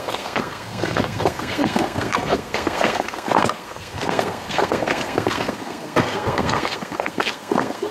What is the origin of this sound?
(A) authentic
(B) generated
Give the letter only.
B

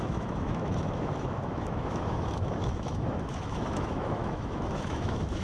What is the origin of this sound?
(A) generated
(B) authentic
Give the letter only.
A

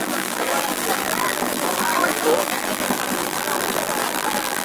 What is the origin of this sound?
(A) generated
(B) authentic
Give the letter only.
A